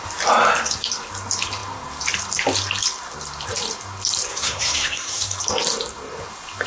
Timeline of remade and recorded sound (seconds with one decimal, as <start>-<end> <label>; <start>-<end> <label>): 0.0-4.3 recorded; 4.3-5.4 remade; 5.4-6.7 recorded